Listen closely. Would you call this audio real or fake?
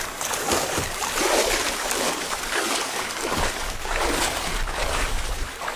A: fake